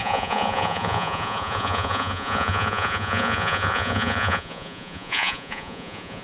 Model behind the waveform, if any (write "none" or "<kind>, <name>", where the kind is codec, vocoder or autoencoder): vocoder, Vocos